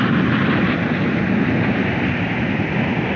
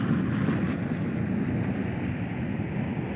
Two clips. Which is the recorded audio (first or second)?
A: second